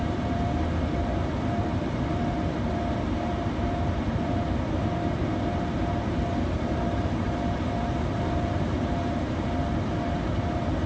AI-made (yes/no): yes